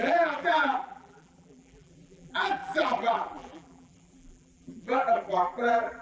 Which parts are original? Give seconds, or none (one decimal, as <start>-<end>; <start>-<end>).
none